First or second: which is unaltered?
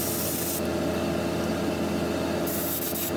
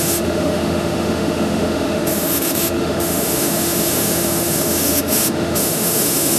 first